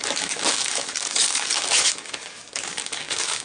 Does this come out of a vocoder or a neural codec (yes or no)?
yes